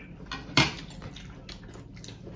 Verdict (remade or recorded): recorded